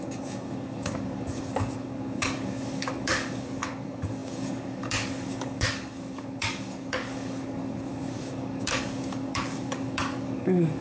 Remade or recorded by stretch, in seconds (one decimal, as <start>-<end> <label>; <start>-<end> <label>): 0.0-10.8 remade